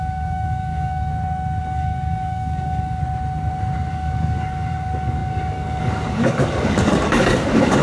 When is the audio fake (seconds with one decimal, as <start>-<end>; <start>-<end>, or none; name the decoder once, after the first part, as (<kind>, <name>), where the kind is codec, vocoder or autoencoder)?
0.0-1.1 (codec, DAC); 1.6-3.0; 3.9-7.8